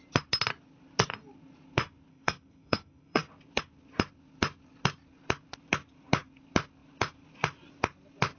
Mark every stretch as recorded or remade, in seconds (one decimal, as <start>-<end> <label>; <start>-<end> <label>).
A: 0.0-2.1 recorded; 2.1-3.3 remade; 3.3-8.4 recorded